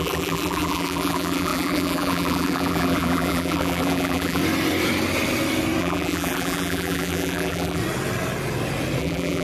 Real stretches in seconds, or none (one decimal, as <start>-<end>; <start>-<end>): 4.4-5.8; 7.8-9.0